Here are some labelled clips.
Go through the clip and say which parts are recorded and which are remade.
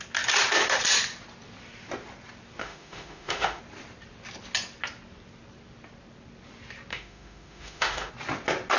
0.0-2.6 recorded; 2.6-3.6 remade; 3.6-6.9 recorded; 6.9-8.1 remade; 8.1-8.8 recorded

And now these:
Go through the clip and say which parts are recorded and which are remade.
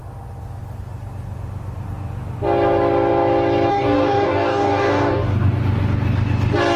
0.0-3.7 recorded; 3.7-5.6 remade; 5.6-6.8 recorded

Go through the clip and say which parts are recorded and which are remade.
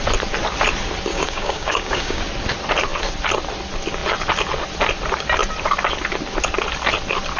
0.0-1.1 recorded; 1.1-2.2 remade; 2.2-7.4 recorded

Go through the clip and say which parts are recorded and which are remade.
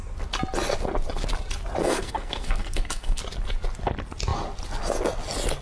0.0-1.8 recorded; 1.8-3.2 remade; 3.2-5.6 recorded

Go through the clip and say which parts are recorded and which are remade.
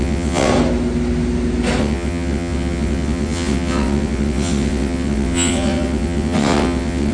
0.0-0.5 remade; 0.5-1.8 recorded; 1.8-7.1 remade